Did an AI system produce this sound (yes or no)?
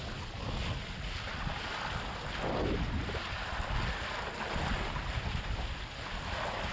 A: no